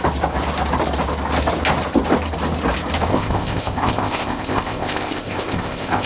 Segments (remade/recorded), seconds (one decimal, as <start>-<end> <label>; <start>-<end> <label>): 0.0-3.1 recorded; 3.1-6.1 remade